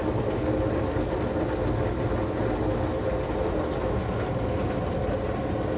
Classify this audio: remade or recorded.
recorded